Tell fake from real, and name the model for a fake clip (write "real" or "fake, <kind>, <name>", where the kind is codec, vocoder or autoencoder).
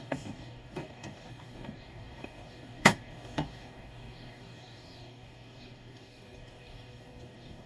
fake, codec, DAC